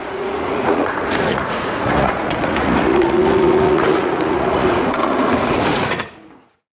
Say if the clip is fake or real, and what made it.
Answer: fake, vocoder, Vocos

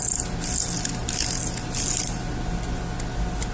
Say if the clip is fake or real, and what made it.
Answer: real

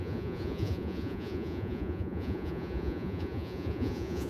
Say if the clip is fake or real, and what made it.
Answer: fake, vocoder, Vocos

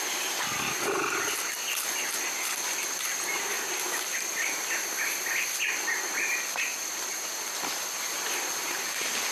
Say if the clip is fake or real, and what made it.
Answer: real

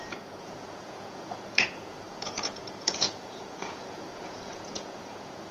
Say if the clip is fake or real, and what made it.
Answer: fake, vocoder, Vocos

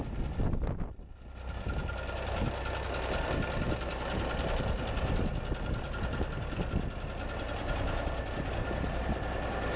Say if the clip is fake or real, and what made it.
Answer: real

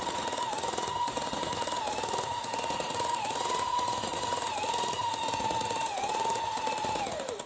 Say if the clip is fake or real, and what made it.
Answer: fake, vocoder, Vocos